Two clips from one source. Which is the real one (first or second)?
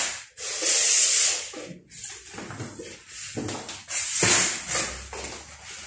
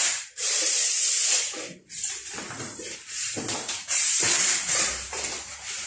first